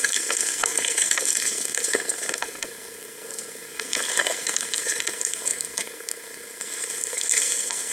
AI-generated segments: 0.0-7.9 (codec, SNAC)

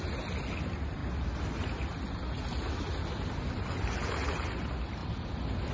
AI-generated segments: none